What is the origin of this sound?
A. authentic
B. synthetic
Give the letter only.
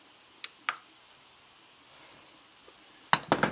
A